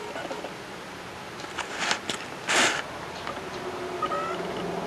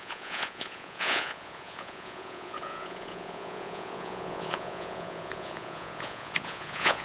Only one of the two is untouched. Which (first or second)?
first